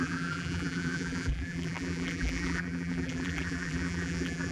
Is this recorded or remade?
remade